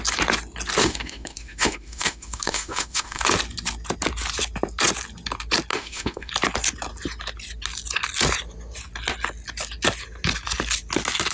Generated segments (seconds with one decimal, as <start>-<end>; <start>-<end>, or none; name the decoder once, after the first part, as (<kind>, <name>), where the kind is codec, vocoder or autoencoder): 0.8-3.2 (autoencoder, DAC-VAE); 5.7-6.3